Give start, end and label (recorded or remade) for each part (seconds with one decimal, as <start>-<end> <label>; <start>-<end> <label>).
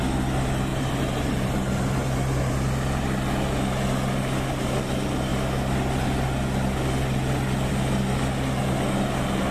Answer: 0.0-0.7 recorded; 0.7-2.5 remade; 2.5-9.5 recorded